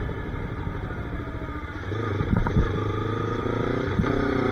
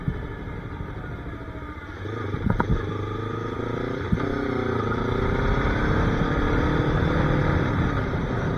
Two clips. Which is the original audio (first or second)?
second